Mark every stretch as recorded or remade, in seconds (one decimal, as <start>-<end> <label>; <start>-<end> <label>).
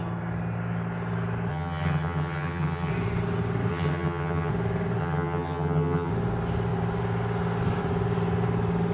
0.0-1.5 recorded; 1.5-2.9 remade; 2.9-3.7 recorded; 3.7-4.5 remade; 4.5-5.0 recorded; 5.0-6.1 remade; 6.1-8.9 recorded